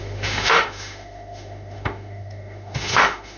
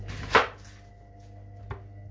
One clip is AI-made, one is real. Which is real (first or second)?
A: second